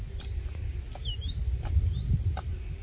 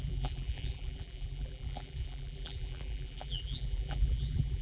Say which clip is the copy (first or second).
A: second